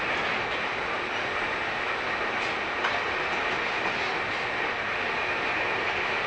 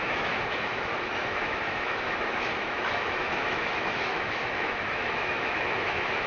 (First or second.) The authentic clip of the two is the first